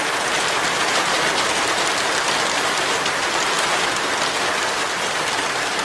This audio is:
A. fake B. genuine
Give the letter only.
B